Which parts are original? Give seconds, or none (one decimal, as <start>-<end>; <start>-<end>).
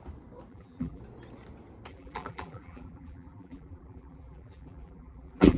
0.0-0.5; 1.0-1.9